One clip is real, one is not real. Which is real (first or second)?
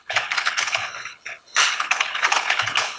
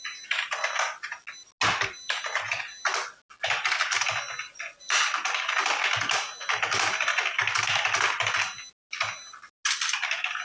second